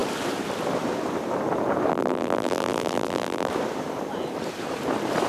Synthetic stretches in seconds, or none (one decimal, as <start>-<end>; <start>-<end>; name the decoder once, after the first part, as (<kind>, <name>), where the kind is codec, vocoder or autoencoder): 1.9-3.5 (vocoder, BigVGAN v2)